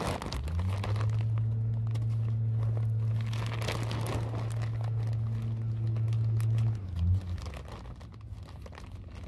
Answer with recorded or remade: recorded